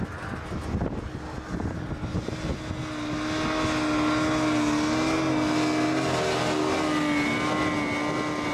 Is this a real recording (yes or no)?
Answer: yes